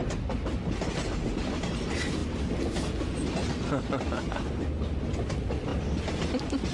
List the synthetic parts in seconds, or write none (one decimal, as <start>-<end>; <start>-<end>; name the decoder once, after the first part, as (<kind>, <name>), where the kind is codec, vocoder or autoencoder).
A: none